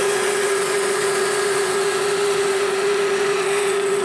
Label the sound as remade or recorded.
remade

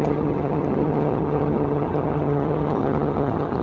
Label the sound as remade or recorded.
remade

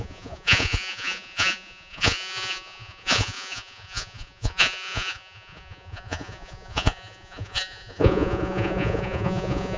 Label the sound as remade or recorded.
remade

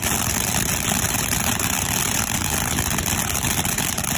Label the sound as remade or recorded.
recorded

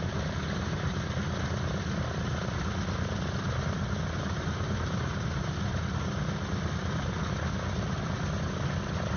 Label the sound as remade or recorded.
recorded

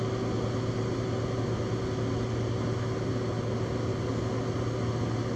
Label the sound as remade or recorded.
recorded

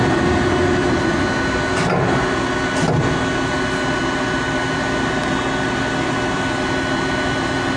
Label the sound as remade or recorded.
recorded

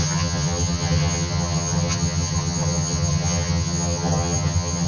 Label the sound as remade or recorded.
remade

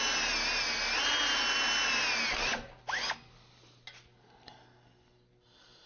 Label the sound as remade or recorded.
recorded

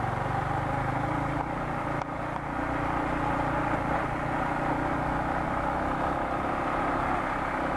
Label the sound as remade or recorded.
recorded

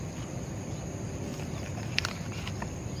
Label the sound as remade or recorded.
remade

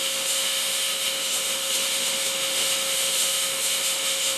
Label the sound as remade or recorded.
remade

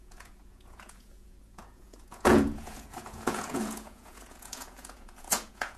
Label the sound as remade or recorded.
remade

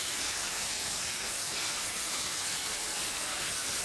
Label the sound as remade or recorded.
remade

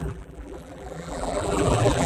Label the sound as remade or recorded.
remade